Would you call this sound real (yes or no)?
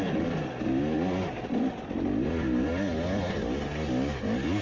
yes